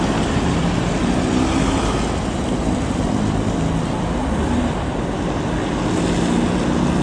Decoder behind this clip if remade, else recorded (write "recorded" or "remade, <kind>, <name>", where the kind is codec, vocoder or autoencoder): recorded